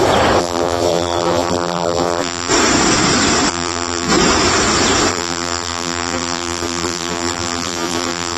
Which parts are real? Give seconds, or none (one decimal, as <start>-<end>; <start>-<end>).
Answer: 0.0-0.4; 2.5-3.5; 4.1-5.1